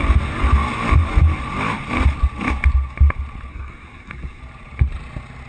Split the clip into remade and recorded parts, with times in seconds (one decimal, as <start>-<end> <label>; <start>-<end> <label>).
0.0-3.5 recorded; 3.5-4.4 remade; 4.4-5.5 recorded

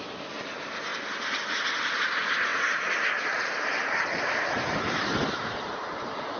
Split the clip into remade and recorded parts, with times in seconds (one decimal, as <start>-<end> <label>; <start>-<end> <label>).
0.0-2.5 recorded; 2.5-6.4 remade

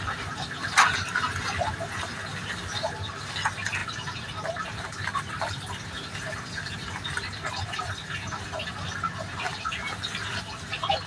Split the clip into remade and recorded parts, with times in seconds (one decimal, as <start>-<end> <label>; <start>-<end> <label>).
0.0-2.3 recorded; 2.3-3.4 remade; 3.4-3.8 recorded; 3.8-5.4 remade; 5.4-11.1 recorded

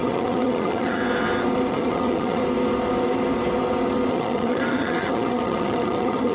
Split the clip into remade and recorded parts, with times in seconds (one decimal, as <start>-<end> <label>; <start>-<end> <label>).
0.0-1.0 remade; 1.0-1.7 recorded; 1.7-2.4 remade; 2.4-4.1 recorded; 4.1-6.3 remade

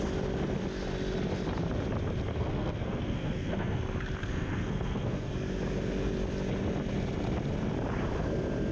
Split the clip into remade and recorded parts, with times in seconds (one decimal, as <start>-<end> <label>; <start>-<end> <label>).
0.0-2.3 recorded; 2.3-3.8 remade; 3.8-4.2 recorded; 4.2-5.3 remade; 5.3-8.7 recorded

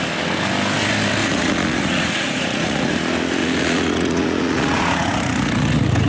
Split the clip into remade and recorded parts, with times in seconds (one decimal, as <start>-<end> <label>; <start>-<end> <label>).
0.0-1.2 recorded; 1.2-2.9 remade; 2.9-3.4 recorded; 3.4-6.1 remade

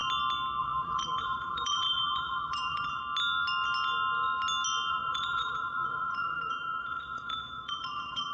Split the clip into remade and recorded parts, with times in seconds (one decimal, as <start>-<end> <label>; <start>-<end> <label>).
0.0-0.6 recorded; 0.6-3.0 remade; 3.0-4.9 recorded; 4.9-8.3 remade